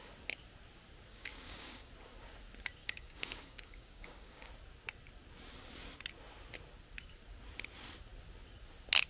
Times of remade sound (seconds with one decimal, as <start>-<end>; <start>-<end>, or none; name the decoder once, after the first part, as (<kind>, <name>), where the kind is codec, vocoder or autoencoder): 1.1-1.9 (codec, DAC); 2.8-4.5